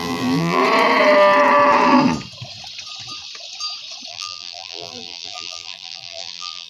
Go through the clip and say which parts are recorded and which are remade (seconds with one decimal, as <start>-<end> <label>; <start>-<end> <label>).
0.0-0.6 remade; 0.6-4.1 recorded; 4.1-6.7 remade